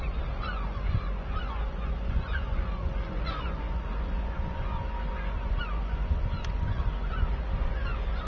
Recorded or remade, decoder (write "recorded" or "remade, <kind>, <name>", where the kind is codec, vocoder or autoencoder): remade, vocoder, Vocos